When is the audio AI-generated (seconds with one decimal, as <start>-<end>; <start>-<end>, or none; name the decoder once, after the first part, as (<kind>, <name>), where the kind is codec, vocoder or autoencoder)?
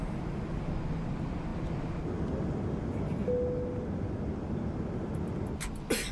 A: none